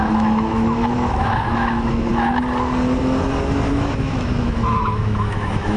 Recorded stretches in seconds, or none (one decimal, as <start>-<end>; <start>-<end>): 2.1-3.7